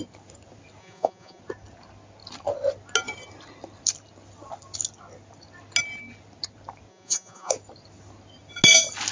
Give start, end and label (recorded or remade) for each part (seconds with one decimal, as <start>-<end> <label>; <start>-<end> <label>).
0.0-0.8 recorded; 0.8-1.4 remade; 1.4-6.9 recorded; 6.9-7.5 remade; 7.5-9.1 recorded